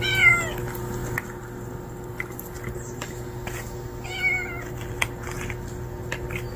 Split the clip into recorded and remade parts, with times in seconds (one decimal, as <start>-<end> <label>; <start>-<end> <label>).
0.0-6.6 recorded